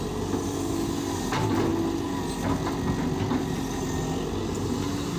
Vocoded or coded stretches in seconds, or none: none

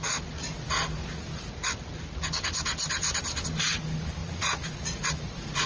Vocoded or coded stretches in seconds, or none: 4.2-5.7 (vocoder, Vocos)